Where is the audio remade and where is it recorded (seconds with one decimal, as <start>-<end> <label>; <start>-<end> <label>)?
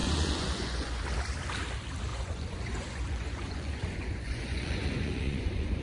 0.0-1.0 remade; 1.0-2.1 recorded; 2.1-5.8 remade